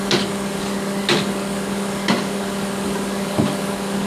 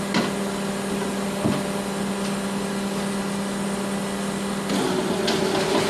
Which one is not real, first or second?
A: first